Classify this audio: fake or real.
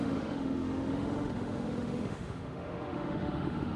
fake